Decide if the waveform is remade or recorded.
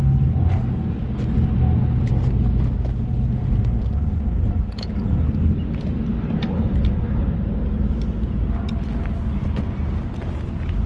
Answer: recorded